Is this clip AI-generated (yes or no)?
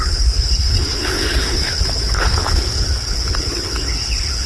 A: yes